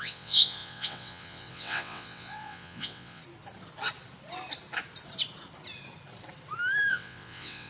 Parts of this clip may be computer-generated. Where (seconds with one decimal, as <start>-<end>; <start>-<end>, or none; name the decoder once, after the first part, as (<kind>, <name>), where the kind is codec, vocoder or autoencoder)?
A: 0.0-3.2 (vocoder, WaveNeXt); 6.9-7.7